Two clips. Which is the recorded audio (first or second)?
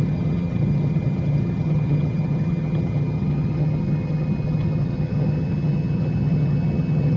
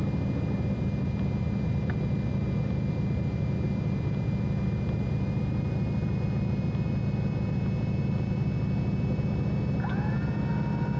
second